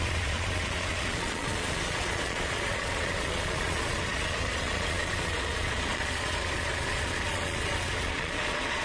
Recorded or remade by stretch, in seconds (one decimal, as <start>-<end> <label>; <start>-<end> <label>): 0.0-8.8 remade